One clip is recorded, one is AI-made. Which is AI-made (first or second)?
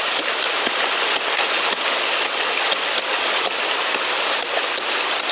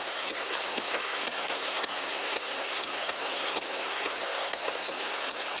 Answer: second